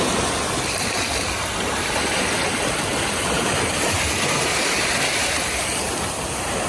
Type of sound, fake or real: real